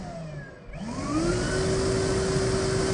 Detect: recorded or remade recorded